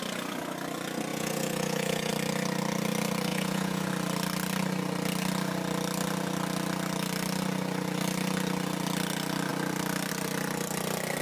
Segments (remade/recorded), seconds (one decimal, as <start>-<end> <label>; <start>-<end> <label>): 0.0-1.1 recorded; 1.1-2.1 remade; 2.1-3.3 recorded; 3.3-3.9 remade; 3.9-11.2 recorded